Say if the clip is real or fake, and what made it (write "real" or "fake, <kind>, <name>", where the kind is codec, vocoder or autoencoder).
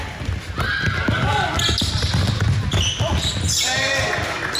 real